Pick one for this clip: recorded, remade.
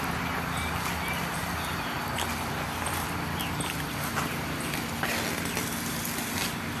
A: recorded